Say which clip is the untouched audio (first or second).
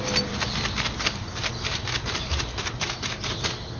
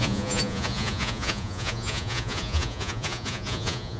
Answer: first